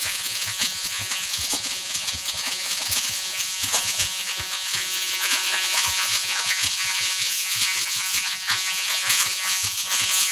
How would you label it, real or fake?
fake